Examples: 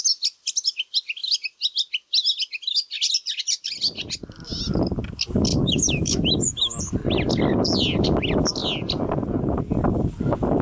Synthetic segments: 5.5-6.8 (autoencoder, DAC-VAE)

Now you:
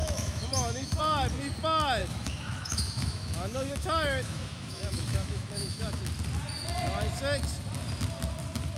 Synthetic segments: 0.0-1.0 (autoencoder, DAC-VAE); 2.0-6.0

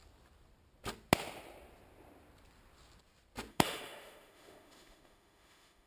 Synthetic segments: 3.5-5.9 (autoencoder, DAC-VAE)

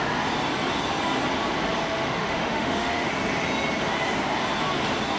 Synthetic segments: 1.9-3.1 (autoencoder, DAC-VAE)

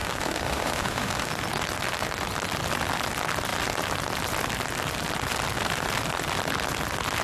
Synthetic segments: 0.0-1.3 (autoencoder, DAC-VAE)

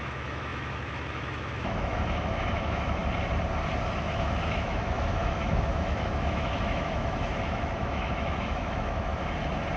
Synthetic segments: 0.0-3.0 (autoencoder, DAC-VAE); 4.0-9.1